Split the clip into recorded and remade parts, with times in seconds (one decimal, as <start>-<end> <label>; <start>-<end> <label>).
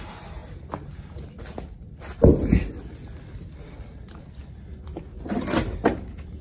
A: 0.0-6.4 recorded